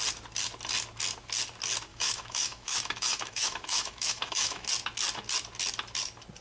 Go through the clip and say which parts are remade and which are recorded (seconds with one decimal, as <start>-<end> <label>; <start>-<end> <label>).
0.0-1.9 recorded; 1.9-4.7 remade; 4.7-6.4 recorded